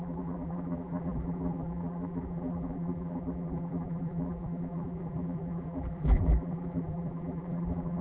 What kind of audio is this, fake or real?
fake